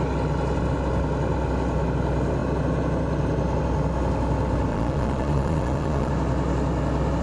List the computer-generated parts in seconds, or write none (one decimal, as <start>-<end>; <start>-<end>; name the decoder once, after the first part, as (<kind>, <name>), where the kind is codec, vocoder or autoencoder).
4.7-6.1 (vocoder, Vocos)